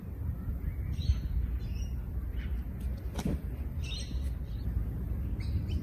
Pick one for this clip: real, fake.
real